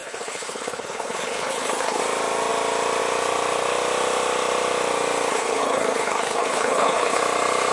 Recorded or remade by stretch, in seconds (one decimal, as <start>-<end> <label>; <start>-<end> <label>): 0.0-2.0 remade; 2.0-5.3 recorded; 5.3-7.2 remade; 7.2-7.7 recorded